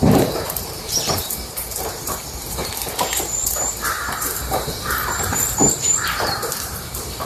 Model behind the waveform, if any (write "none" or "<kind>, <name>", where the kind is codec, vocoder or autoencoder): vocoder, BigVGAN v2